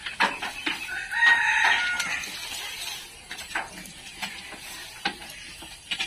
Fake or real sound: real